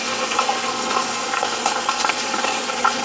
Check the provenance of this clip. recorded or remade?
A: remade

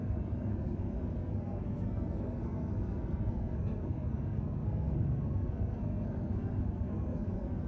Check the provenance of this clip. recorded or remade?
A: remade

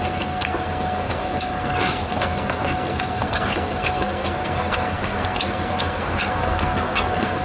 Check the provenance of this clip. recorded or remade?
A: remade